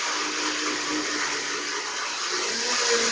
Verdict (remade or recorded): recorded